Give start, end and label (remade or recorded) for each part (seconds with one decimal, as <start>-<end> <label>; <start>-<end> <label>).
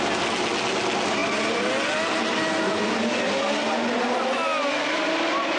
0.0-5.6 recorded